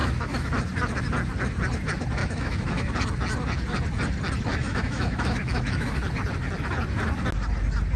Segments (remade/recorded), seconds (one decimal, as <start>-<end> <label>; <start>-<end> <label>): 0.0-0.5 remade; 0.5-2.2 recorded; 2.2-2.9 remade; 2.9-4.5 recorded; 4.5-6.0 remade; 6.0-8.0 recorded